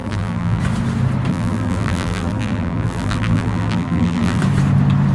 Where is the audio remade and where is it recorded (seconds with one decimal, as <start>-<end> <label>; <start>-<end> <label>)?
0.0-0.6 remade; 0.6-1.3 recorded; 1.3-4.4 remade; 4.4-5.1 recorded